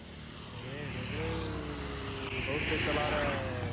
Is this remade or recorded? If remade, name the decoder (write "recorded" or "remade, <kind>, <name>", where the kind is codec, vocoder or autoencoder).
recorded